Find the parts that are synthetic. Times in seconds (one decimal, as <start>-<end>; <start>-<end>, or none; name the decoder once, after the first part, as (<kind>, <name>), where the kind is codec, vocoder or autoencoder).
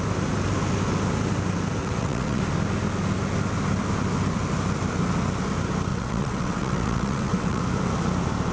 1.8-2.4 (vocoder, WaveNeXt); 5.9-7.6